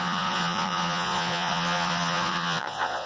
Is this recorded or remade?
remade